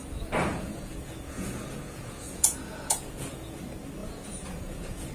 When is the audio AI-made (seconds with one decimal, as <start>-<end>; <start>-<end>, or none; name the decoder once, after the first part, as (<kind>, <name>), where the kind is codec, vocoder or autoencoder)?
0.5-3.6 (vocoder, Vocos); 4.0-5.1